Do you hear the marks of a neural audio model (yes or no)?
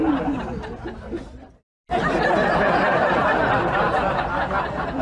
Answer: no